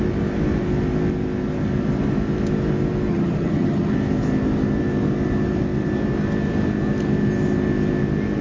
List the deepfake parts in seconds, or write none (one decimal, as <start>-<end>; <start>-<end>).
3.1-3.9